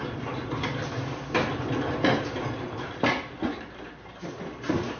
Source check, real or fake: real